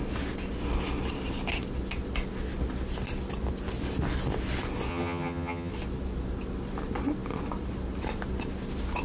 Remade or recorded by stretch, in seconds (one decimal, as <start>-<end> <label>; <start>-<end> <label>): 0.0-4.9 recorded; 4.9-5.7 remade; 5.7-9.0 recorded